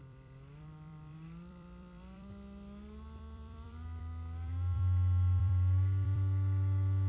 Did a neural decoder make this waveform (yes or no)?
yes